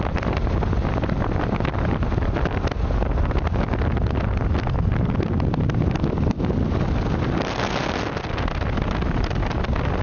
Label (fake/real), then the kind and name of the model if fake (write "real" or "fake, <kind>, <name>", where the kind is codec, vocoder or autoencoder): real